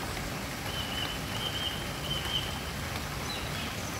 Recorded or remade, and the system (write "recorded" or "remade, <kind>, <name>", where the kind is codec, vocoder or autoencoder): recorded